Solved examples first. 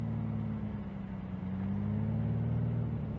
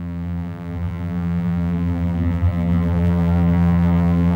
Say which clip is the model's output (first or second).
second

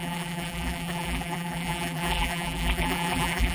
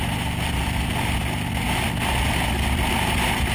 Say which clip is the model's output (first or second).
first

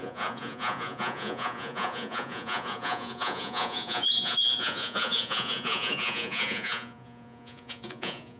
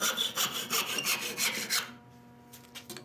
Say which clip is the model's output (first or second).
first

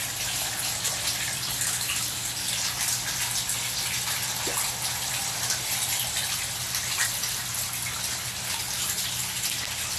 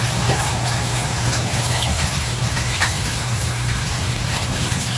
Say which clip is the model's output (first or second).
second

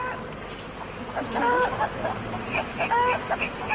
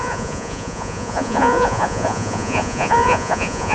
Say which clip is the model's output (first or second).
second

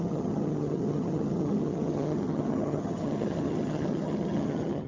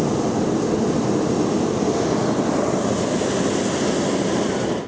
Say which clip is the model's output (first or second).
first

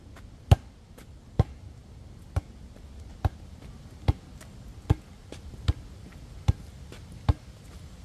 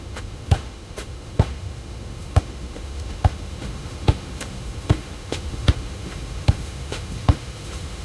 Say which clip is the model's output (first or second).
second